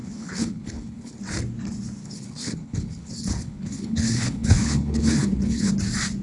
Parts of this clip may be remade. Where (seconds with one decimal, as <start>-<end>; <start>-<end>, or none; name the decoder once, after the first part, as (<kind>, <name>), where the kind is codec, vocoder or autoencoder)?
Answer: 0.0-1.2 (codec, HILCodec); 2.0-5.7

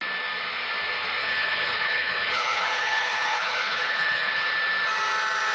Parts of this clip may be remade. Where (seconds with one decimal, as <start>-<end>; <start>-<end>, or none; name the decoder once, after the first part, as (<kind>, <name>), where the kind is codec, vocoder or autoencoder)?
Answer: 1.2-4.4 (codec, HILCodec)

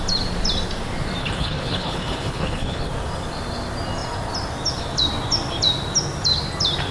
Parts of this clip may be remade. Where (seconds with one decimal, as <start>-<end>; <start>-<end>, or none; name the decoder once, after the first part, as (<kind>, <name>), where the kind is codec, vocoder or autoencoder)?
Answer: 1.2-2.9 (codec, HILCodec)

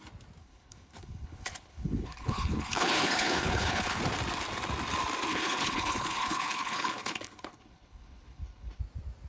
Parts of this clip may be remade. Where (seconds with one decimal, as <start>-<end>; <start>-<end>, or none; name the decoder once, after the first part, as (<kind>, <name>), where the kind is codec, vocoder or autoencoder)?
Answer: 0.4-4.0 (codec, HILCodec); 5.3-8.8

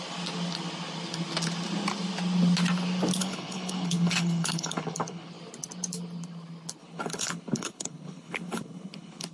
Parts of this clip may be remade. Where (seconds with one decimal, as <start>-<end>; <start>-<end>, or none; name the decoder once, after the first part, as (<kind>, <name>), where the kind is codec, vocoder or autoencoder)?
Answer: 3.2-5.3 (codec, HILCodec); 6.8-9.3

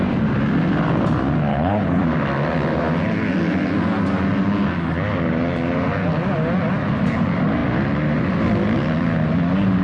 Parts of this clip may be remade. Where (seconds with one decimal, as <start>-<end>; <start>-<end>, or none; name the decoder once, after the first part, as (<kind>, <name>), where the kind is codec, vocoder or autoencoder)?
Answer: 1.5-2.0 (codec, HILCodec)

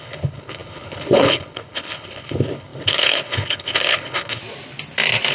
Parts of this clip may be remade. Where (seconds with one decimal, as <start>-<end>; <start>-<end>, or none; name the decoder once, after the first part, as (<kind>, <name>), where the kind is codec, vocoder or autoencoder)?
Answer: 0.0-4.4 (codec, HILCodec)

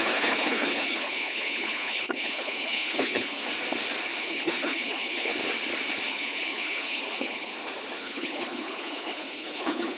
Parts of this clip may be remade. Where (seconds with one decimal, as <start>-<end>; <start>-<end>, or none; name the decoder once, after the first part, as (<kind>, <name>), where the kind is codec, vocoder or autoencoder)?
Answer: 0.0-3.4 (codec, HILCodec); 4.2-5.3; 6.1-7.5; 8.0-10.0